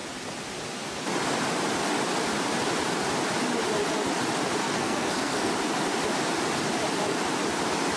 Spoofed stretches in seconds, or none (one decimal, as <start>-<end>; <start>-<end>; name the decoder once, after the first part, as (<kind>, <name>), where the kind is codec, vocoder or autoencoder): 4.6-5.5 (codec, SNAC)